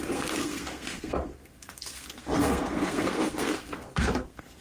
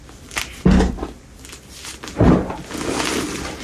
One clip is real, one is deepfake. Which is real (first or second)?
second